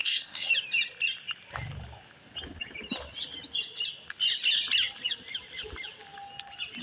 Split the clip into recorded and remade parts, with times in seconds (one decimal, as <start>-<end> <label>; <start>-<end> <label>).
0.0-0.5 remade; 0.5-6.8 recorded